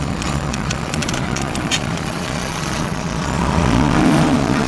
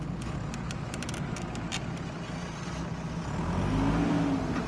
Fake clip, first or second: first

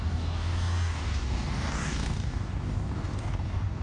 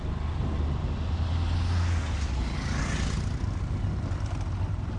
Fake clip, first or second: first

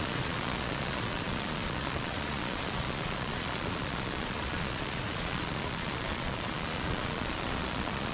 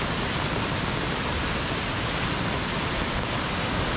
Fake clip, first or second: first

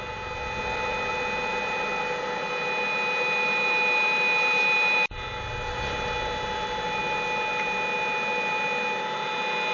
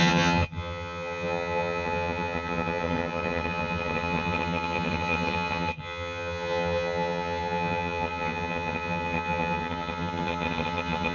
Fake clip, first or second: second